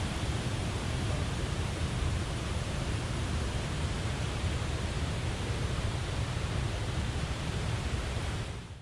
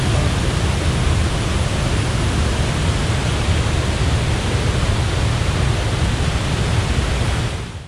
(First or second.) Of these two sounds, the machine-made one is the first